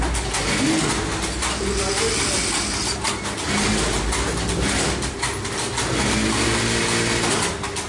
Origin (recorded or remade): recorded